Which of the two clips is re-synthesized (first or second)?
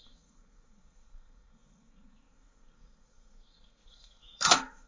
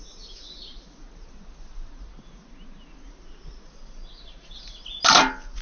first